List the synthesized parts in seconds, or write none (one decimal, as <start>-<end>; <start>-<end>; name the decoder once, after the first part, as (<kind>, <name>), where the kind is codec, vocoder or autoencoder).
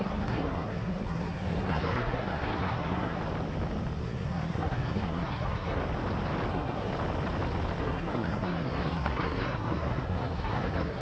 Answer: 0.0-3.2 (codec, SNAC); 4.0-5.8; 6.5-6.9; 7.8-11.0